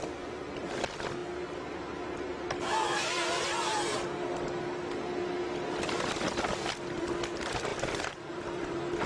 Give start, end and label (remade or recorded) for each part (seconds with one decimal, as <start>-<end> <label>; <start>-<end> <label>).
0.0-7.7 recorded; 7.7-9.1 remade